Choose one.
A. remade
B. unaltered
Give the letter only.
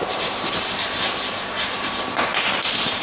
A